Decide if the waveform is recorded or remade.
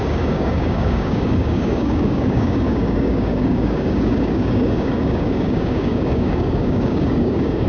remade